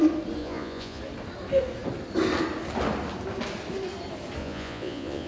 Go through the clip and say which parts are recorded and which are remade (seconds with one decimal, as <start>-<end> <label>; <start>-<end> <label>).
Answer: 0.0-0.4 recorded; 0.4-1.0 remade; 1.0-4.4 recorded; 4.4-5.3 remade